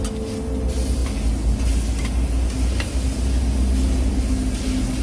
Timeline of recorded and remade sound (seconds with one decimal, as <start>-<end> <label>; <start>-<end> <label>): 0.0-5.0 recorded